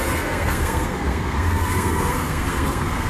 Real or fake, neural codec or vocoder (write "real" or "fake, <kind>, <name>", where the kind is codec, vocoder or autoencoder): fake, codec, SNAC